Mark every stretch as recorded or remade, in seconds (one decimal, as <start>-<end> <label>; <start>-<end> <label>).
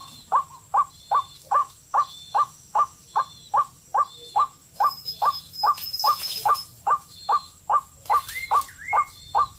0.0-1.6 recorded; 1.6-3.2 remade; 3.2-4.6 recorded; 4.6-7.6 remade; 7.6-9.6 recorded